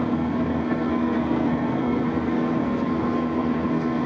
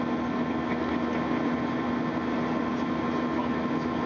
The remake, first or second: first